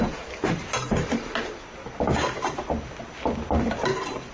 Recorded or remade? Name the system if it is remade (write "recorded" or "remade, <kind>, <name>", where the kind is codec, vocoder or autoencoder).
recorded